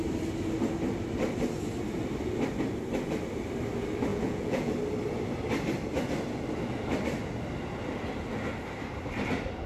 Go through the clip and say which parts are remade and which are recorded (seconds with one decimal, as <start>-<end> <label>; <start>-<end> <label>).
0.0-4.1 recorded; 4.1-4.7 remade; 4.7-9.7 recorded